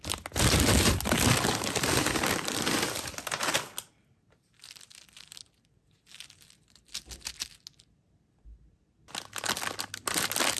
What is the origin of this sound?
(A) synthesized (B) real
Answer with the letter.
B